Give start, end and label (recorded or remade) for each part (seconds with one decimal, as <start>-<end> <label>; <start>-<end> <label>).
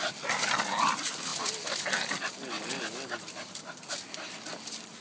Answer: 0.0-5.0 recorded